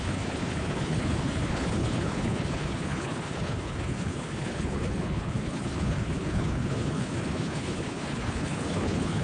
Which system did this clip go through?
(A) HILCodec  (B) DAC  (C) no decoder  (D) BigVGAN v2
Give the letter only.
A